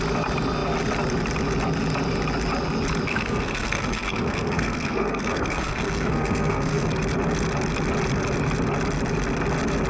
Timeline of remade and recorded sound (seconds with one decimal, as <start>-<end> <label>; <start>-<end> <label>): 0.0-3.1 recorded; 3.1-6.9 remade; 6.9-9.9 recorded